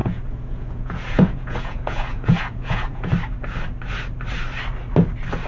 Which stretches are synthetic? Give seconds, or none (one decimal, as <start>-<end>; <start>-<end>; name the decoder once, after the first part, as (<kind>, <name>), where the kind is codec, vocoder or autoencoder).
0.0-3.1 (vocoder, Vocos)